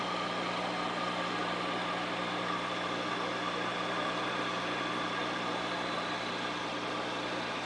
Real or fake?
real